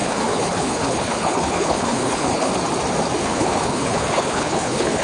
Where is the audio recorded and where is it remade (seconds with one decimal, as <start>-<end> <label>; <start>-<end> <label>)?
0.0-2.5 remade; 2.5-3.2 recorded; 3.2-5.0 remade